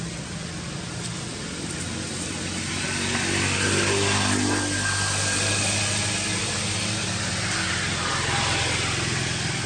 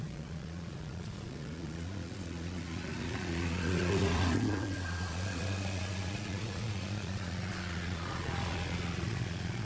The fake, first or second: second